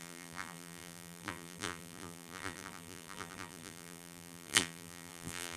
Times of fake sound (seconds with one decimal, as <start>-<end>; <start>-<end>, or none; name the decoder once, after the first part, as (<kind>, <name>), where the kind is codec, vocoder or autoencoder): 0.0-5.6 (vocoder, BigVGAN v2)